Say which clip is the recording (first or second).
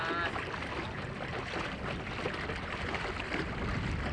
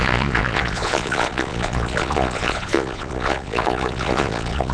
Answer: first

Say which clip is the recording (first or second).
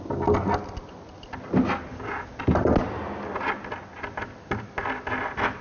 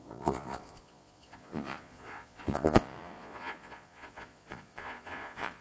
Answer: first